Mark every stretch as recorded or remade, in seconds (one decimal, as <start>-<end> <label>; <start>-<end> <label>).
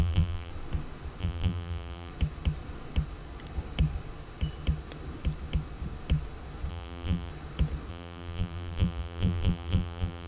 0.0-0.5 remade; 0.5-1.2 recorded; 1.2-2.1 remade; 2.1-6.7 recorded; 6.7-7.3 remade; 7.3-7.9 recorded; 7.9-10.3 remade